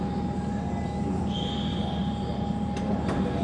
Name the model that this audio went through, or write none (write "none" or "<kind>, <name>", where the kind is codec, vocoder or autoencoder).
none